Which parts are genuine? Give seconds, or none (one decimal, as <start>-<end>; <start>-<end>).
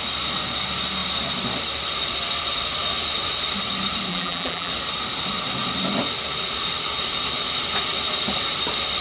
0.0-4.1; 4.7-9.0